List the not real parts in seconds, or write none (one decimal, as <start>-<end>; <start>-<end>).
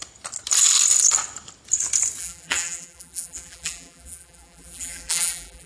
2.2-5.7